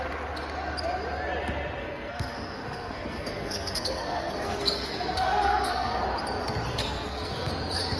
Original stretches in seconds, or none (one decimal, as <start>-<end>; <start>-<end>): 0.0-1.8; 6.0-6.7; 7.5-8.0